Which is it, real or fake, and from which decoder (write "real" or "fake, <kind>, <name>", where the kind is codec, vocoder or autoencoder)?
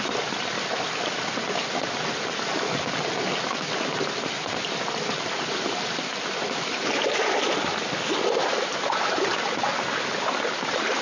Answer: real